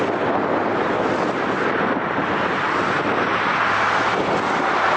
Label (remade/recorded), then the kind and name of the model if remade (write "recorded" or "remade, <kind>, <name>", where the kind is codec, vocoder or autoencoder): recorded